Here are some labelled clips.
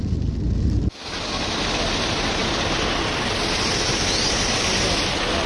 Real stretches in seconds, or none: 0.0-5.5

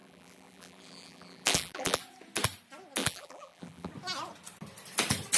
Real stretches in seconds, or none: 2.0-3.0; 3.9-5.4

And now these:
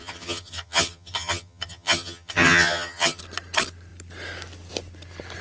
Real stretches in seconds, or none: 3.2-5.4

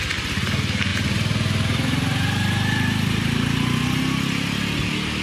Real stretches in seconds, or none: 0.0-0.9; 4.0-5.2